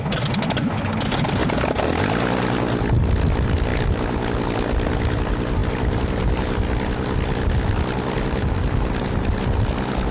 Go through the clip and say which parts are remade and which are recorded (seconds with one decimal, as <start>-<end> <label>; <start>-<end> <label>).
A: 0.0-10.1 recorded